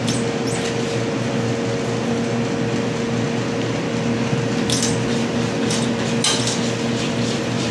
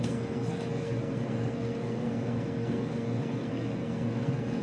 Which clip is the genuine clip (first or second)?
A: first